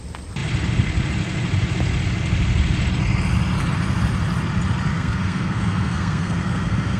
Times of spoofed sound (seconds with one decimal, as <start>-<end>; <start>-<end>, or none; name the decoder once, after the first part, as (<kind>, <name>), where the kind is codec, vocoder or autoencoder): 4.9-7.0 (codec, SNAC)